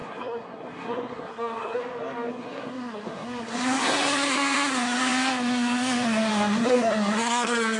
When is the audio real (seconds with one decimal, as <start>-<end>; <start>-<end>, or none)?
1.8-2.3

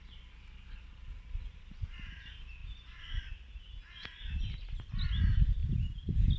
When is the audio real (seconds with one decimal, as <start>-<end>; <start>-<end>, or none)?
0.0-5.6

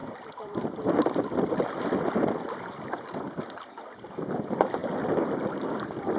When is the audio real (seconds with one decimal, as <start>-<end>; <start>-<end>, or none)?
0.0-6.2

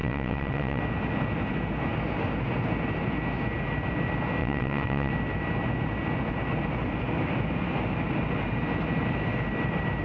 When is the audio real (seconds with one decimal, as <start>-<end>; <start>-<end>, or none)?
0.8-4.4; 5.1-10.0

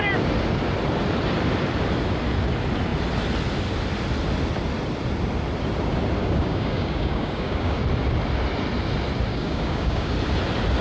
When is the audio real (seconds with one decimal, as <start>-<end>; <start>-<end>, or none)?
0.0-6.2; 7.8-9.3; 10.1-10.8

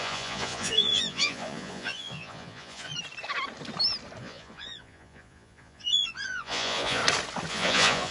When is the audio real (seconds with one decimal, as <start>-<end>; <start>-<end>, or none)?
2.9-4.2; 7.0-7.5